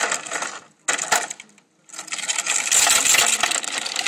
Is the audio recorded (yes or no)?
yes